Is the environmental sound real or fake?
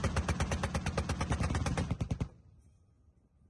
real